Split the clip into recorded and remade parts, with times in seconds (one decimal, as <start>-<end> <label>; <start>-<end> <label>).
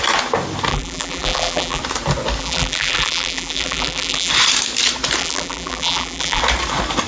0.0-0.7 recorded; 0.7-1.8 remade; 1.8-2.4 recorded; 2.4-4.3 remade; 4.3-5.2 recorded; 5.2-6.4 remade; 6.4-7.1 recorded